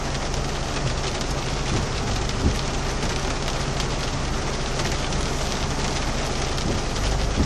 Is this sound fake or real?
real